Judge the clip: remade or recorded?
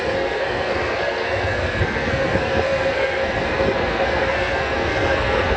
remade